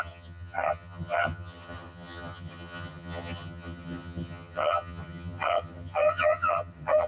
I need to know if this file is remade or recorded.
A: remade